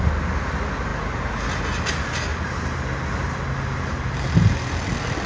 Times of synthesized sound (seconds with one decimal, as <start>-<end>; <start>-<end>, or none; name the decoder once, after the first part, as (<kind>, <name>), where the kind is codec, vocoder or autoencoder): none